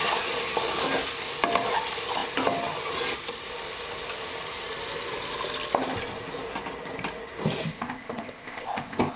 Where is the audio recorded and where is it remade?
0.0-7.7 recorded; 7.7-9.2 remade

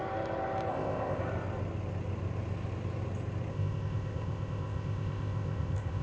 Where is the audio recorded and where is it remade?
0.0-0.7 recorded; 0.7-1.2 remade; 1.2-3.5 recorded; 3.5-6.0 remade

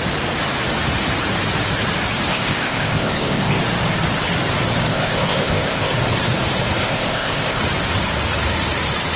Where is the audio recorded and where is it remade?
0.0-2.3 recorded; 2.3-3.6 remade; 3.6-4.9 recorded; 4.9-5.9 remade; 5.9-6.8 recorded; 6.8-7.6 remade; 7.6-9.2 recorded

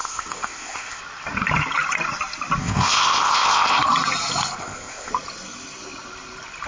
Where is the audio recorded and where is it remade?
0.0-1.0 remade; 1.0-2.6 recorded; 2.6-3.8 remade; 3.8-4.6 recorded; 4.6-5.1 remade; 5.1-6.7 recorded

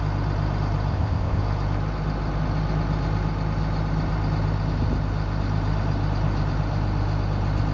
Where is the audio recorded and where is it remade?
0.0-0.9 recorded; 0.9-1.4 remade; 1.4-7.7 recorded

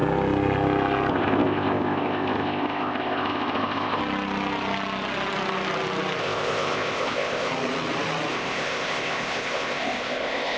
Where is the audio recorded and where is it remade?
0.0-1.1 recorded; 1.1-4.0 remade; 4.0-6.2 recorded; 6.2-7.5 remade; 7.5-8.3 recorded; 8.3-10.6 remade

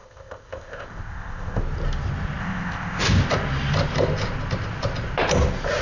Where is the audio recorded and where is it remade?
0.0-1.6 remade; 1.6-2.4 recorded; 2.4-3.0 remade; 3.0-5.8 recorded

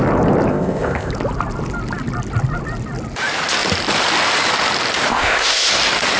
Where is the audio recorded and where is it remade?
0.0-0.5 recorded; 0.5-1.1 remade; 1.1-5.1 recorded; 5.1-5.7 remade; 5.7-6.2 recorded